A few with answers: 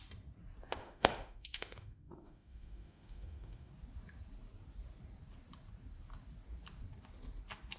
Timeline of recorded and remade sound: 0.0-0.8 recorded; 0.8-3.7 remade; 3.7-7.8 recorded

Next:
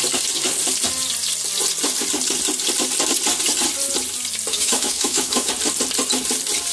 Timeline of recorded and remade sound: 0.0-4.5 recorded; 4.5-5.5 remade; 5.5-6.7 recorded

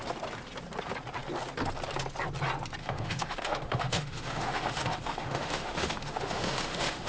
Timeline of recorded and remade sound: 0.0-2.8 recorded; 2.8-7.1 remade

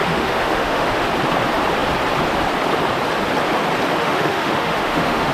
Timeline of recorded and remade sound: 0.0-1.1 remade; 1.1-4.0 recorded; 4.0-5.3 remade

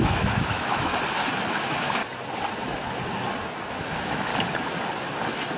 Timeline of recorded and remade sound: 0.0-0.9 remade; 0.9-1.5 recorded; 1.5-2.0 remade; 2.0-3.7 recorded; 3.7-4.3 remade; 4.3-5.6 recorded